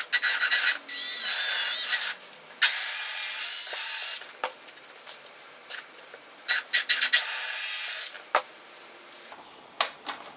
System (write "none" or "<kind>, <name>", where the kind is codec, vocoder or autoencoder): none